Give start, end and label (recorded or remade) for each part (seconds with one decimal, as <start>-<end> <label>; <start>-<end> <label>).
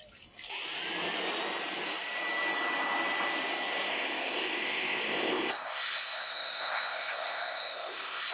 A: 0.0-3.9 recorded; 3.9-8.3 remade